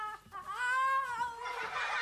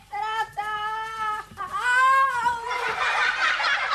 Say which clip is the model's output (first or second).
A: second